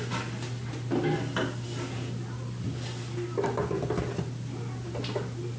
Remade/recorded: recorded